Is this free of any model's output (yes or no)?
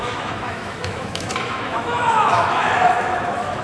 no